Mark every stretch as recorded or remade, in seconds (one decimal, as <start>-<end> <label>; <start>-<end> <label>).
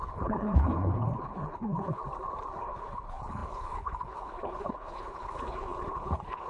0.0-2.0 remade; 2.0-2.6 recorded; 2.6-6.5 remade